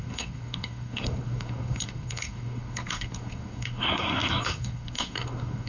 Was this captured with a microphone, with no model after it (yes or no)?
no